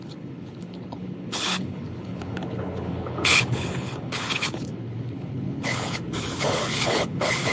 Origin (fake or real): fake